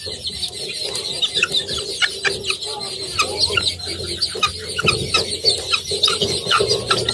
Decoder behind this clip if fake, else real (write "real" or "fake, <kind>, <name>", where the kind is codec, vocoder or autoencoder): real